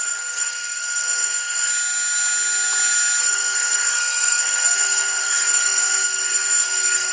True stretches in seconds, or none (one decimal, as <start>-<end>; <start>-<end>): 1.7-3.2